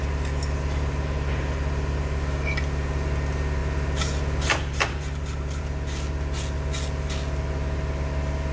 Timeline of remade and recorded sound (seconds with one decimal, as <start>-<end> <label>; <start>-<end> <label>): 0.0-8.5 recorded